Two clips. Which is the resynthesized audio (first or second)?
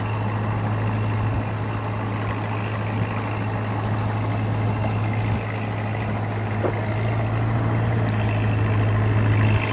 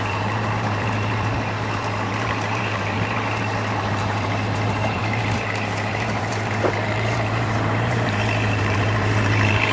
second